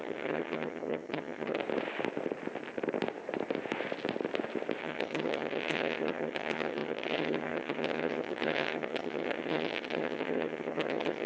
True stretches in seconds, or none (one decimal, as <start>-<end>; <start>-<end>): 1.6-4.8